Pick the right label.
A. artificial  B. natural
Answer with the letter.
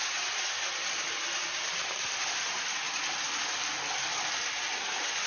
B